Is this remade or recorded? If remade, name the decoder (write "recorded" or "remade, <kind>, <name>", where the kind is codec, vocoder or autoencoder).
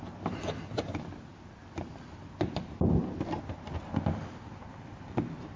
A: recorded